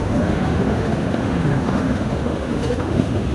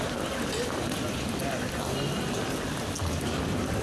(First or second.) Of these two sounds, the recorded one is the second